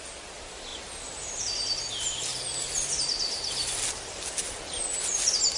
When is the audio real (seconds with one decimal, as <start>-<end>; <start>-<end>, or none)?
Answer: 0.0-5.6